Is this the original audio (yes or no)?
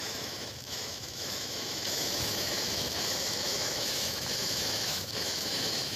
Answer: no